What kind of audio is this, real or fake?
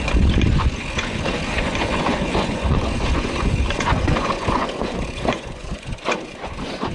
fake